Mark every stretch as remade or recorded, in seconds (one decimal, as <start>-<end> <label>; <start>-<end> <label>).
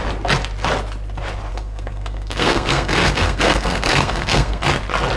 0.0-1.5 recorded; 1.5-4.6 remade; 4.6-5.2 recorded